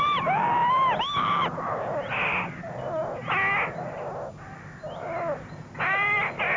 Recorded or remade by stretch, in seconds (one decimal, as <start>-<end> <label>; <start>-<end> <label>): 0.0-3.0 remade; 3.0-5.8 recorded; 5.8-6.6 remade